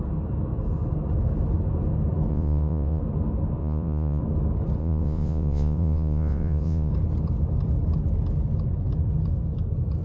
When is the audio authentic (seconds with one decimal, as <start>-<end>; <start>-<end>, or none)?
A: 0.0-2.3; 3.0-3.6; 4.2-4.8; 6.9-10.0